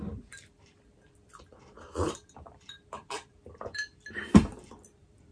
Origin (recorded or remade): remade